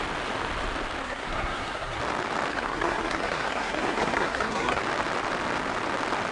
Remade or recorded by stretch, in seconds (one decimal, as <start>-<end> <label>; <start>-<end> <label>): 0.0-1.0 recorded; 1.0-2.0 remade; 2.0-2.5 recorded; 2.5-4.8 remade; 4.8-6.3 recorded